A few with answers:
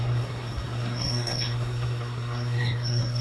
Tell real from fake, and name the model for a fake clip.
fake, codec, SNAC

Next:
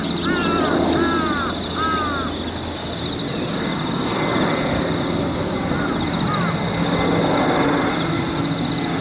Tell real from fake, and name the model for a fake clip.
real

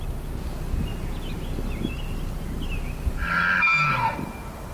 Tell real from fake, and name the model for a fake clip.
real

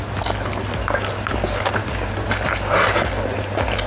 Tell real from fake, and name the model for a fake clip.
real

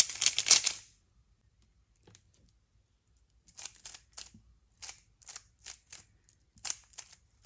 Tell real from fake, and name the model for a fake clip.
real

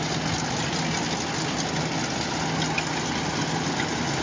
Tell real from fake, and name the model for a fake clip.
real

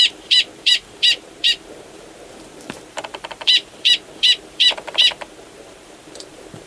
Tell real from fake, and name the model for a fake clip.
fake, vocoder, BigVGAN v2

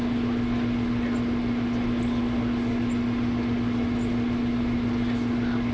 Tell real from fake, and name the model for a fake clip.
real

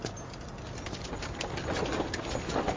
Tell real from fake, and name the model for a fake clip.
real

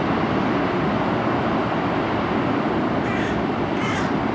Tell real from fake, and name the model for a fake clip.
real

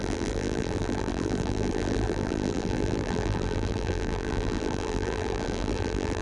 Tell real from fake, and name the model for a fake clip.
fake, vocoder, BigVGAN v2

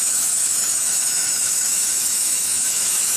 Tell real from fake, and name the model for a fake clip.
fake, autoencoder, DAC-VAE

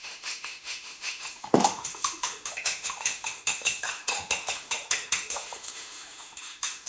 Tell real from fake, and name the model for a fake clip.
fake, autoencoder, DAC-VAE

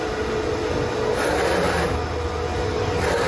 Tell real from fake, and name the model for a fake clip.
real